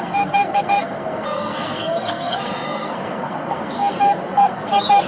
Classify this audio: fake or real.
fake